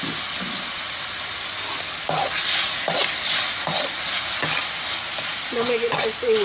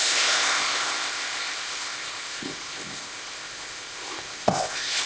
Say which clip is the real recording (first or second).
first